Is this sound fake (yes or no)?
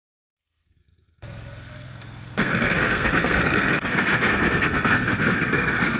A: yes